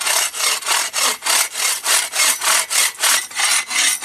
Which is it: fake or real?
real